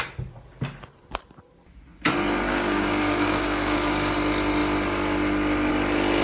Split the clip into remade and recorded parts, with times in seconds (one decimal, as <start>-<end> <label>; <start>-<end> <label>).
0.0-2.3 recorded; 2.3-4.1 remade; 4.1-6.2 recorded

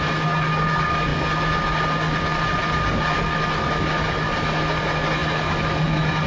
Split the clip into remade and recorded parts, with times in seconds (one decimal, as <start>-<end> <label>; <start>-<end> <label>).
0.0-6.3 recorded

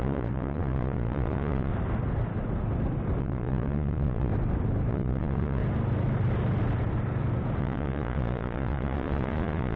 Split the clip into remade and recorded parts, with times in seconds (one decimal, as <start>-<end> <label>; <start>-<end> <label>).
0.0-1.7 remade; 1.7-3.2 recorded; 3.2-4.3 remade; 4.3-4.9 recorded; 4.9-5.6 remade; 5.6-7.6 recorded; 7.6-9.8 remade

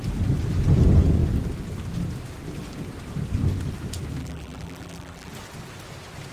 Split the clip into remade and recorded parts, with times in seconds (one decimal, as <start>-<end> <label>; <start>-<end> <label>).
0.0-4.2 recorded; 4.2-5.3 remade; 5.3-6.3 recorded

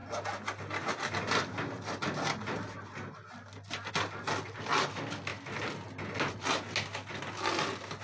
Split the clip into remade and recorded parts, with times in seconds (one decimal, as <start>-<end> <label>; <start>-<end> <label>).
0.0-8.0 recorded

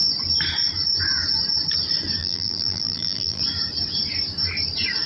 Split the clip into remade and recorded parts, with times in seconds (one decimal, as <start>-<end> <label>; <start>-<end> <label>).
0.0-2.2 recorded; 2.2-3.4 remade; 3.4-5.1 recorded